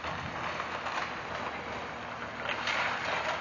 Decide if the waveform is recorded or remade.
recorded